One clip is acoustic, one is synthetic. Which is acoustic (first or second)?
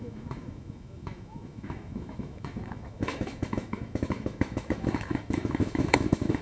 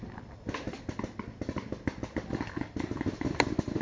second